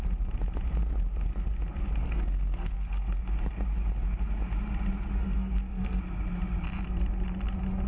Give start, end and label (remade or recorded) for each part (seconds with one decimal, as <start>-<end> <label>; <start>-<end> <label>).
0.0-2.0 recorded; 2.0-3.2 remade; 3.2-5.2 recorded; 5.2-6.0 remade; 6.0-7.9 recorded